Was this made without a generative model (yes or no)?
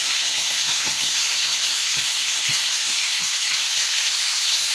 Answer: no